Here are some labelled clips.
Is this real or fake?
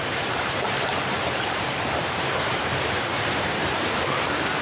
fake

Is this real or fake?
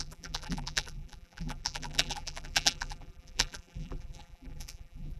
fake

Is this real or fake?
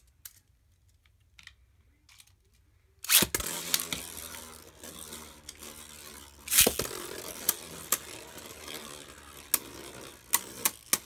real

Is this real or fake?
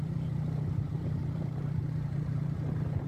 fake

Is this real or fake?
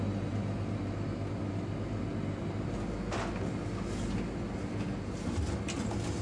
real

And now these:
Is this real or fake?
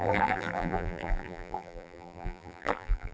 fake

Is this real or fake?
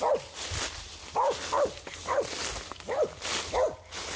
real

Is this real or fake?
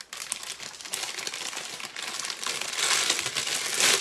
fake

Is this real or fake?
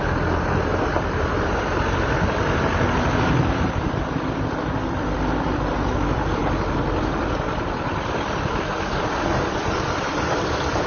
fake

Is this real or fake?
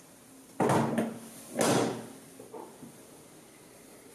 real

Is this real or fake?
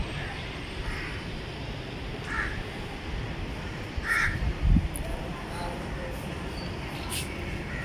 fake